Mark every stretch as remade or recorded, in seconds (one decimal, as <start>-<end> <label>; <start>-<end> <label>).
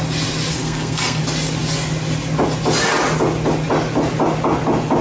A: 0.0-0.5 recorded; 0.5-1.2 remade; 1.2-5.0 recorded